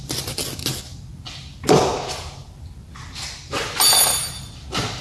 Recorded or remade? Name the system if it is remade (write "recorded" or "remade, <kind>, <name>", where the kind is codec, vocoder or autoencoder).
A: recorded